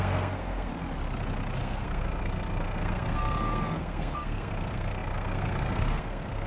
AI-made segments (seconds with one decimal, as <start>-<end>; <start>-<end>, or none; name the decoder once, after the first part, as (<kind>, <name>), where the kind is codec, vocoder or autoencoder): 0.0-0.7 (codec, SNAC); 1.6-6.5